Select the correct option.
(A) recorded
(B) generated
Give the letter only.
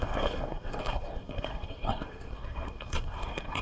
B